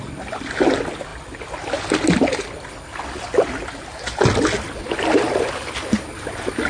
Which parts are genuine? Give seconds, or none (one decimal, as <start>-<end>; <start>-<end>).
0.0-6.7

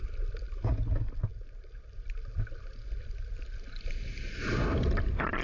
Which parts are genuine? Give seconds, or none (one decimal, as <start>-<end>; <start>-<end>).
0.0-5.4

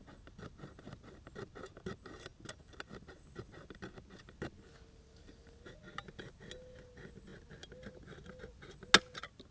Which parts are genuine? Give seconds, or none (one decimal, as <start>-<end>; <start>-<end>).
0.0-9.5

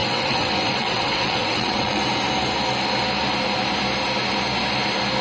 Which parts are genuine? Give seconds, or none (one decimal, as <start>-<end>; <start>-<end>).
2.0-5.2